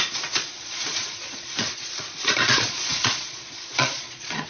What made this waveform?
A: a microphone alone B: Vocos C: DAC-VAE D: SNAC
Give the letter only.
B